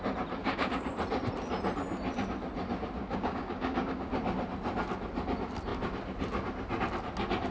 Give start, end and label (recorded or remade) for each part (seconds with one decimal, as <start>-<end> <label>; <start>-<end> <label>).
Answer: 0.0-0.4 recorded; 0.4-0.9 remade; 0.9-3.0 recorded; 3.0-4.1 remade; 4.1-7.5 recorded